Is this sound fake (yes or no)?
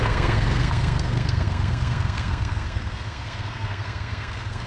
yes